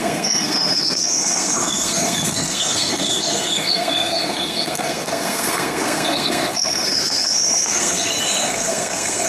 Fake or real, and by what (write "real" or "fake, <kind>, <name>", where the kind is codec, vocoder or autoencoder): fake, codec, SNAC